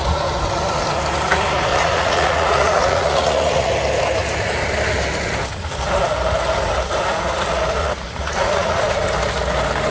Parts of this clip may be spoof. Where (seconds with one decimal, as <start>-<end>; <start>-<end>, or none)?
1.7-3.7; 7.8-8.8